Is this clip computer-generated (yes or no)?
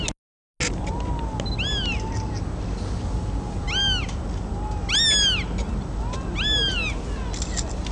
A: no